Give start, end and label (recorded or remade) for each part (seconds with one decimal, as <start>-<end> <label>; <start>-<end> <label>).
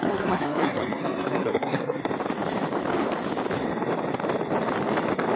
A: 0.0-2.0 remade; 2.0-5.4 recorded